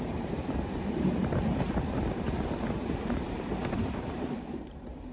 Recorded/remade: remade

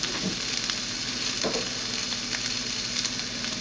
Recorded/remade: recorded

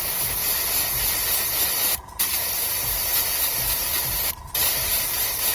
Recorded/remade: remade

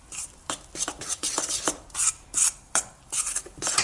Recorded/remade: remade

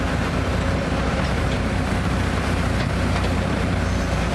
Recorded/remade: remade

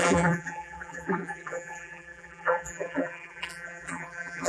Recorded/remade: remade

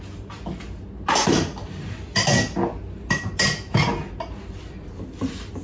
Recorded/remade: recorded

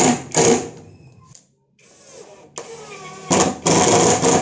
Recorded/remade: recorded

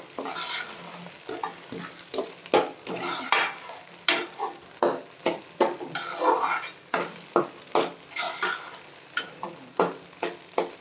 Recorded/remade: recorded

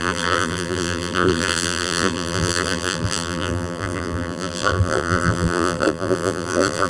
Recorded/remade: remade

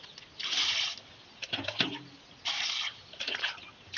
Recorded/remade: recorded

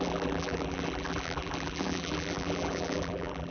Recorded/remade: remade